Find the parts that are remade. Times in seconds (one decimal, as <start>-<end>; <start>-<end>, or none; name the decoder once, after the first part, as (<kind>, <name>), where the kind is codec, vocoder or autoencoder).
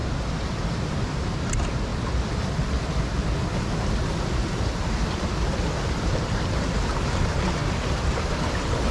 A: 0.8-1.9 (vocoder, BigVGAN v2); 6.0-8.9